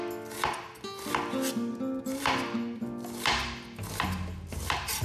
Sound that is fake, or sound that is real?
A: real